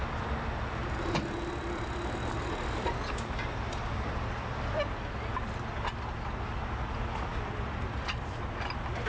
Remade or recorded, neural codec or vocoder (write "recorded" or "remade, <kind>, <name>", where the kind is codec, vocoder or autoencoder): recorded